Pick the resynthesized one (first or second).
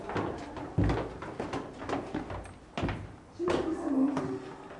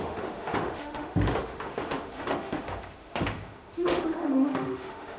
second